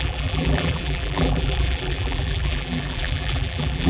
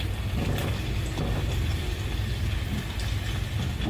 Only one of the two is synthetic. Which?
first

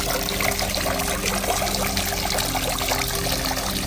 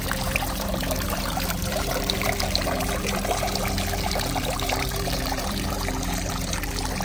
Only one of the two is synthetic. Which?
second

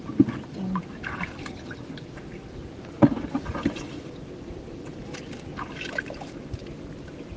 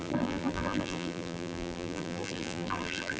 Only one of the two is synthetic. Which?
second